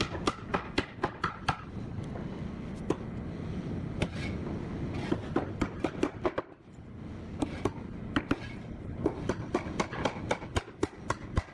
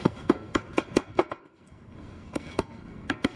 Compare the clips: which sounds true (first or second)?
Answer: first